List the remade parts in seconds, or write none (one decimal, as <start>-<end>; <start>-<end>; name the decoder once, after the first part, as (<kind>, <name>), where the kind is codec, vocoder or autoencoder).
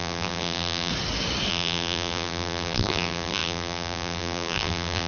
0.0-0.9 (vocoder, BigVGAN v2); 1.5-5.1